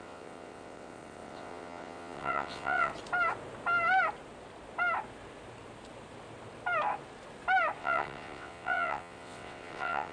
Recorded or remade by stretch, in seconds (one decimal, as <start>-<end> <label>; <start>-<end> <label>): 0.0-2.9 remade; 2.9-7.8 recorded; 7.8-10.1 remade